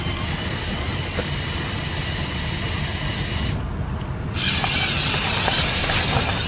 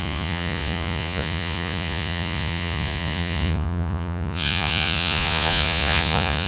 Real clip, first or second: first